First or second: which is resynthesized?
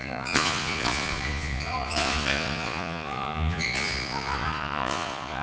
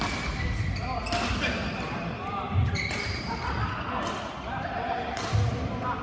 first